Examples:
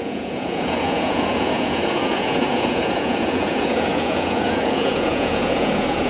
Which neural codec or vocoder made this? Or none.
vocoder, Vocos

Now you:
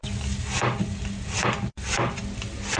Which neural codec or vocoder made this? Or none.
none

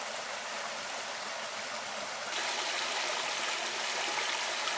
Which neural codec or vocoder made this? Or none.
none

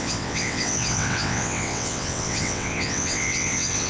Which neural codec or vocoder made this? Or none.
vocoder, WaveNeXt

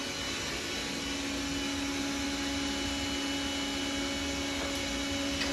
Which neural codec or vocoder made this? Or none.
none